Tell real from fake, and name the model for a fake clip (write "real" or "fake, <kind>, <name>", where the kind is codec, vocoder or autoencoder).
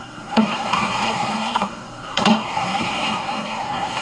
fake, codec, SNAC